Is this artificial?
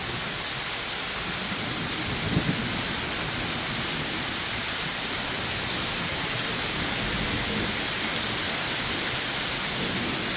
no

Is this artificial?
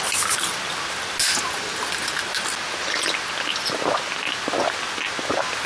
no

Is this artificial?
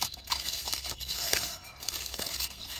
yes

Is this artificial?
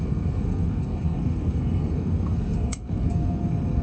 yes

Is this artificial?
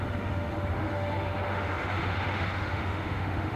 yes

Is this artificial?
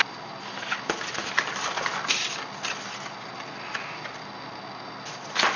no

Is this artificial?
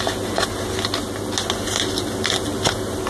no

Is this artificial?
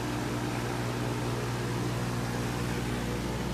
no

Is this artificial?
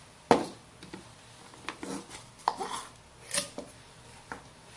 no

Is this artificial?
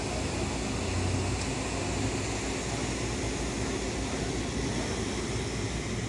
no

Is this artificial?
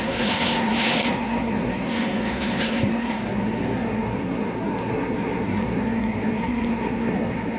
yes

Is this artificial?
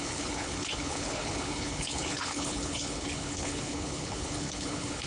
yes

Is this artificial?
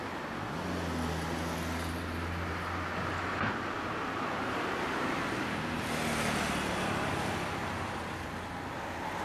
no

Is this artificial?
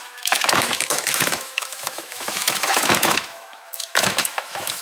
yes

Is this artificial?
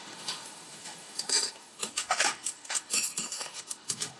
yes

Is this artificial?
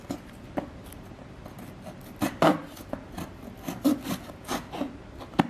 no